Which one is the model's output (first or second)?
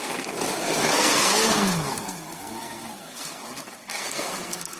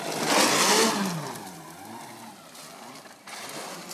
first